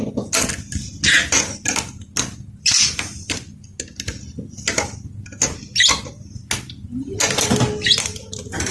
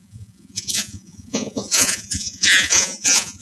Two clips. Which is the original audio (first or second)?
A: first